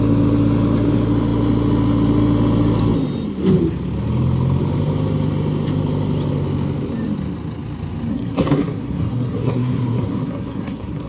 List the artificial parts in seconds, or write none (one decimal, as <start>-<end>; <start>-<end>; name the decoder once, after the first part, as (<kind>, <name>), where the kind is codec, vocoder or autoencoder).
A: 8.1-11.1 (codec, SNAC)